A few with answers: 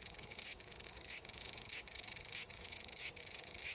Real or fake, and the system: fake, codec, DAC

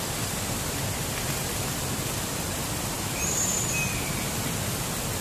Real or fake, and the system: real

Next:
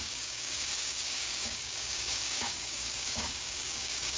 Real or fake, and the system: fake, codec, DAC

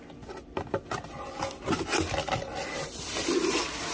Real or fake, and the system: real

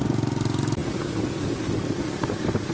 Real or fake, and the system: real